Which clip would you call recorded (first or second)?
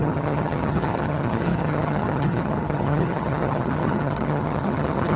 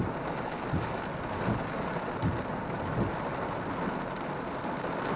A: second